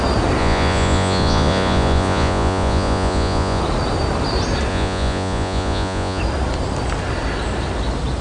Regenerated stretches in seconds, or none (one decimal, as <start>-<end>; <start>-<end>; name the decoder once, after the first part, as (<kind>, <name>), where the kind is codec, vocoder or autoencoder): 0.4-3.6 (vocoder, Vocos); 4.7-6.2